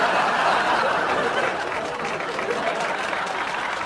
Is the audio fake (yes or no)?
no